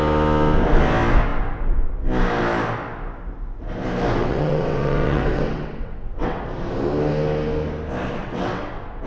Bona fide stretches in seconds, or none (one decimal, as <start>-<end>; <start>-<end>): 0.0-4.2; 6.4-8.1